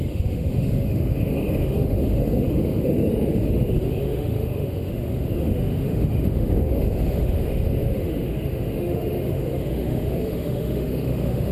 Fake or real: fake